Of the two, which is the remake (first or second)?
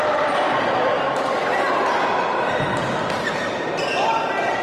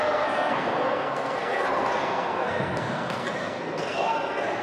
second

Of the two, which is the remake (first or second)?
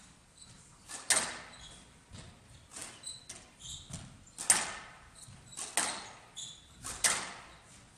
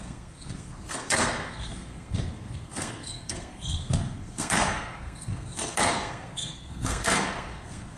second